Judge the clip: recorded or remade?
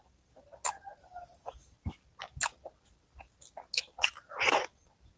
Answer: recorded